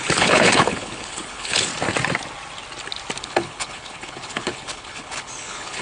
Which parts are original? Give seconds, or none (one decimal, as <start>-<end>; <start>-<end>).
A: 1.7-3.2